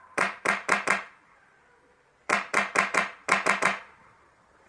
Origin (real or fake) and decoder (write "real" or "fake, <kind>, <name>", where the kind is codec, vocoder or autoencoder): fake, vocoder, BigVGAN v2